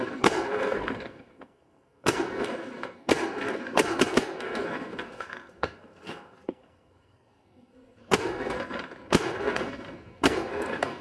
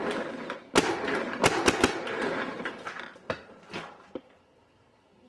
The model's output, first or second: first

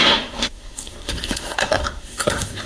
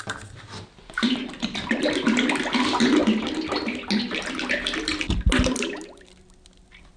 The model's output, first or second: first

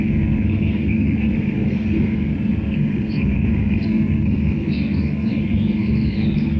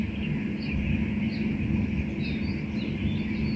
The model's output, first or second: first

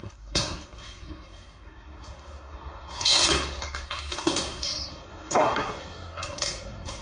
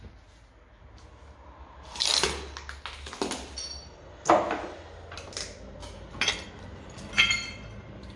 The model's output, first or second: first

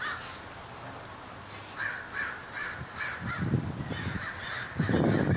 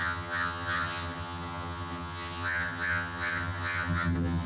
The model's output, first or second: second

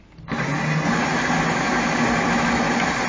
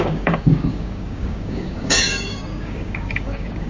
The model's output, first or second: second